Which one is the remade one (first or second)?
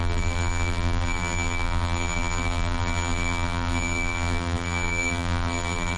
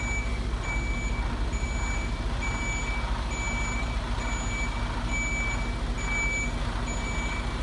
first